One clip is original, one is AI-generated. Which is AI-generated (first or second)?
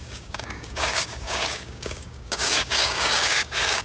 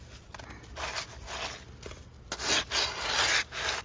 first